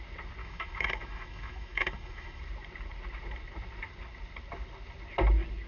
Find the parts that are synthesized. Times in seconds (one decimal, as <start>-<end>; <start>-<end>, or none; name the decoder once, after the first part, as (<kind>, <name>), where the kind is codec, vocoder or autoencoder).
0.4-2.4 (autoencoder, DAC-VAE)